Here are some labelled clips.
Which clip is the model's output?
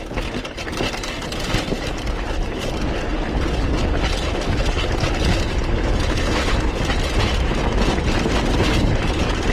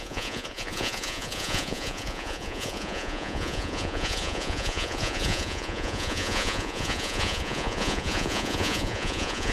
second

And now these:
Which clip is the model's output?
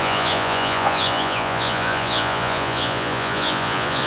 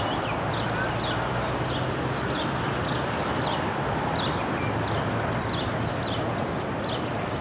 first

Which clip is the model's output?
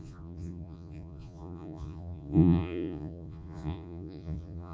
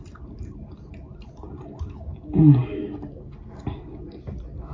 first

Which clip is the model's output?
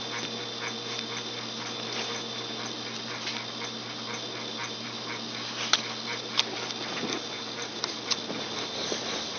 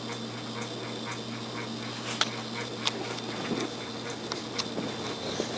first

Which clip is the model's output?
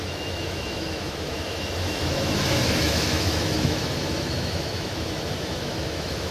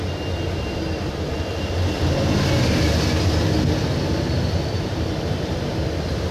first